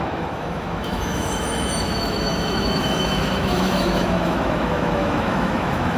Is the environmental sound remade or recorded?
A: remade